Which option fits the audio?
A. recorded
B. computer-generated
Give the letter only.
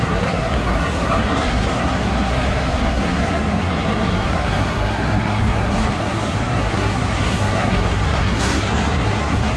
B